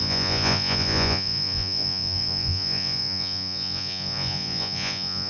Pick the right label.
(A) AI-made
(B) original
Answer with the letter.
A